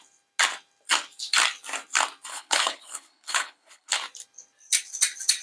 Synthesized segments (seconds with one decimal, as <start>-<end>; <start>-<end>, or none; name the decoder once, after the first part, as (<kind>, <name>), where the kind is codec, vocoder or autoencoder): 2.3-3.9 (codec, HILCodec)